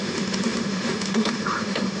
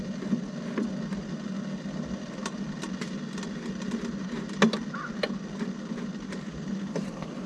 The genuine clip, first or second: second